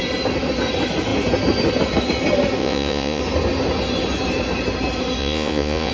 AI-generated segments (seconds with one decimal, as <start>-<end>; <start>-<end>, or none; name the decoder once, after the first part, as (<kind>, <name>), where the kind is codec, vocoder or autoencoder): 2.6-3.2 (vocoder, Vocos); 5.2-5.9